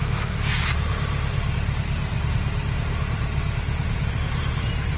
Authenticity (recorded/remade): remade